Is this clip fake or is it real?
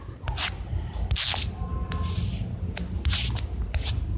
real